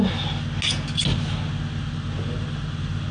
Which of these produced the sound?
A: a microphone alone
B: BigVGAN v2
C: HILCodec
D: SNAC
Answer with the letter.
A